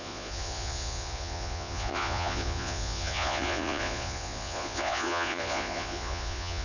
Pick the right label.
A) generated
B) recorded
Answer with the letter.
A